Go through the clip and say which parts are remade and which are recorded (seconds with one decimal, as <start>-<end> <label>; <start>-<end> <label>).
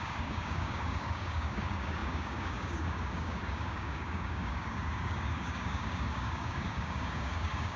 0.0-7.8 remade